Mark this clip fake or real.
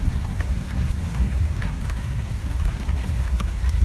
fake